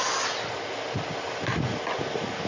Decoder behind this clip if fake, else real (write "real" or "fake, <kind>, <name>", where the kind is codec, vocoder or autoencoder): real